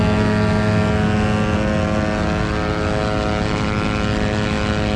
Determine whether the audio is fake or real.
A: real